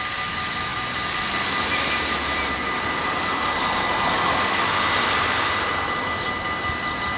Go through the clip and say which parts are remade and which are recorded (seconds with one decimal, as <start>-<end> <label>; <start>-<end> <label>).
0.0-7.2 recorded